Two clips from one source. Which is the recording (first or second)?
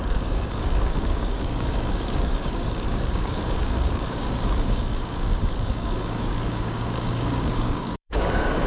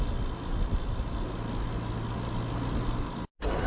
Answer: second